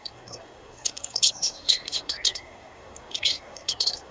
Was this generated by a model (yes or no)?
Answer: yes